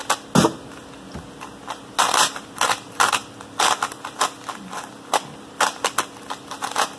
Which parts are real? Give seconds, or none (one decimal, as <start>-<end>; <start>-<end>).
0.0-7.0